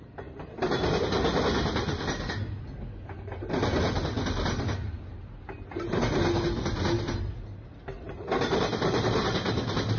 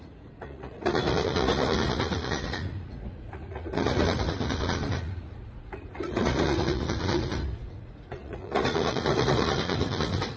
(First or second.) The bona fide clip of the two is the first